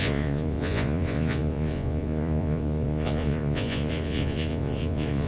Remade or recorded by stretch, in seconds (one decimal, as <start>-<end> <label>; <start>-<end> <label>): 0.0-5.3 remade